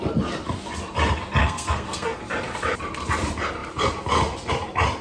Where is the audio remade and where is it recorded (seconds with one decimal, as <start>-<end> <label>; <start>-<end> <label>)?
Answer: 0.0-1.4 recorded; 1.4-2.2 remade; 2.2-5.0 recorded